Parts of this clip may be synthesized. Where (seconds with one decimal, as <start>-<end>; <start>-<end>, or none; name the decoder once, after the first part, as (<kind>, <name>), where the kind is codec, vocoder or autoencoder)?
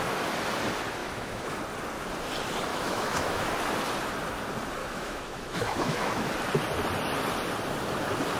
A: 1.0-1.6 (autoencoder, DAC-VAE); 2.7-3.5; 4.8-6.3